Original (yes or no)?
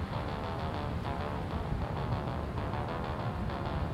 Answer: yes